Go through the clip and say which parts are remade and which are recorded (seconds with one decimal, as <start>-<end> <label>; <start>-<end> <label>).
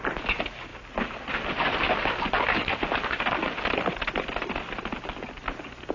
0.0-5.9 recorded